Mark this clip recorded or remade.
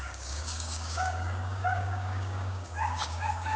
remade